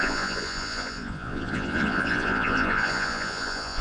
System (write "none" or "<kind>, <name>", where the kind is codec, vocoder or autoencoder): vocoder, Vocos